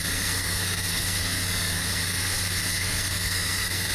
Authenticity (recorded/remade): remade